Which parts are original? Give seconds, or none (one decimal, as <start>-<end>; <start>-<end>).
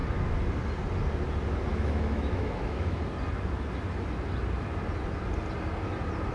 0.0-1.7; 3.0-6.3